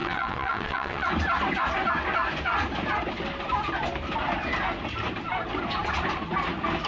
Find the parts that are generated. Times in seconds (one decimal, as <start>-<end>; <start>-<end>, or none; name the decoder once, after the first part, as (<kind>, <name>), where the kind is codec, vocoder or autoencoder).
0.0-1.1 (vocoder, WaveNeXt)